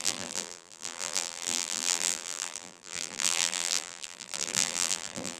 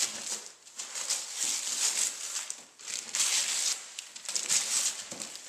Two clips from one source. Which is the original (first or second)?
second